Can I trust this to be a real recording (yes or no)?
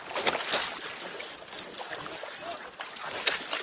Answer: yes